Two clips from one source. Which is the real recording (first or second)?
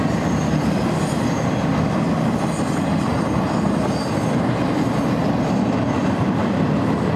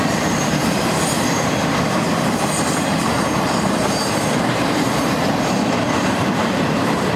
first